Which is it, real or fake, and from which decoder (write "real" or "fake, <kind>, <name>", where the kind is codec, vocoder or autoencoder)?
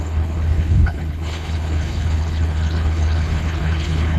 fake, codec, HILCodec